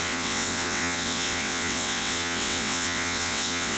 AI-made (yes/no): yes